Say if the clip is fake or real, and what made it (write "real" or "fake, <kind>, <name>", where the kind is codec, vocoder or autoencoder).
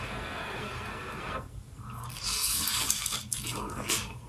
fake, codec, SNAC